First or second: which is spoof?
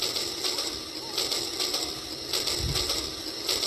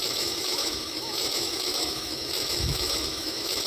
second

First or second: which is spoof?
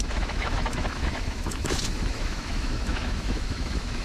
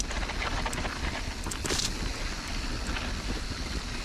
first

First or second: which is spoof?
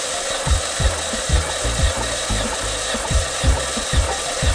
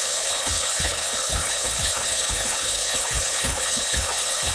second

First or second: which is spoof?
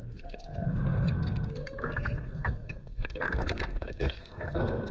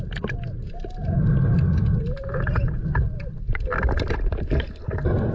first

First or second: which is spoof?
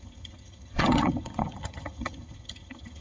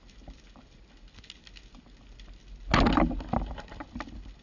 first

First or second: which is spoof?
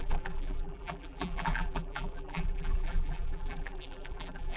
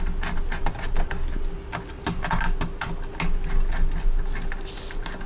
first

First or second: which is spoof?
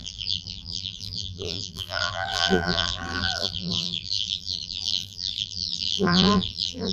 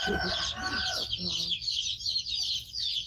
first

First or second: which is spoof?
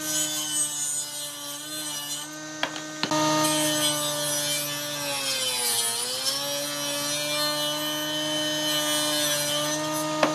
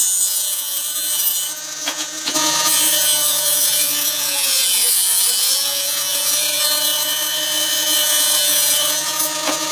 second